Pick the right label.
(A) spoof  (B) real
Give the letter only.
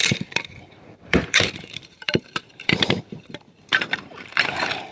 A